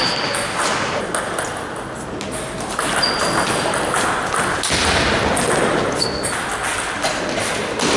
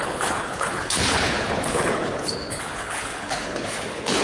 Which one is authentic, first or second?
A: first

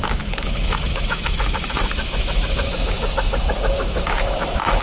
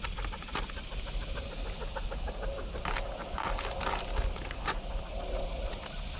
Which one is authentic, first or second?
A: second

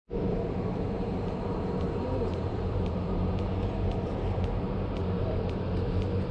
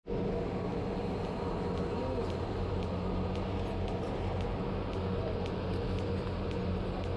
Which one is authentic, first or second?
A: second